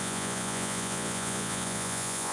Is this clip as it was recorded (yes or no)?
no